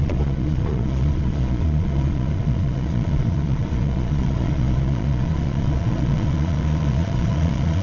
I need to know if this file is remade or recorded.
remade